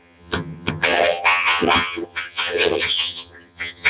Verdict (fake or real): fake